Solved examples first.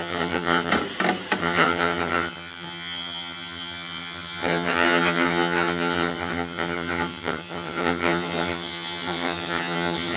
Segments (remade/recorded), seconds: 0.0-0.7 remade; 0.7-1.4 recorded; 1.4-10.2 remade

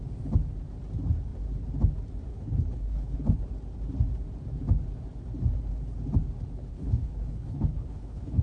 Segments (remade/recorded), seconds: 0.0-2.3 recorded; 2.3-3.4 remade; 3.4-6.7 recorded; 6.7-8.4 remade